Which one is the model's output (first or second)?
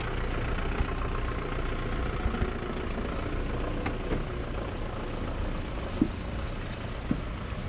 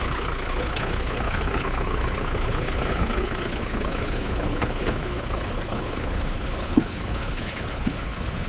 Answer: second